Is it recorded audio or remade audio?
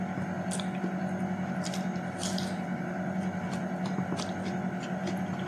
recorded